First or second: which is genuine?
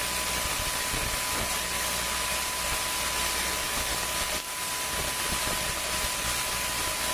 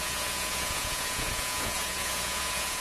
first